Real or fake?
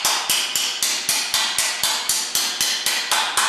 real